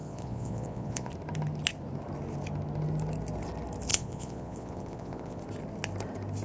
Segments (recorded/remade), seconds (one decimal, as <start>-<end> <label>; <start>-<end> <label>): 0.0-1.1 remade; 1.1-3.9 recorded; 3.9-5.4 remade; 5.4-6.4 recorded